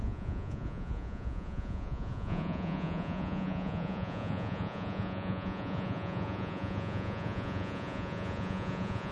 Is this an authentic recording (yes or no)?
no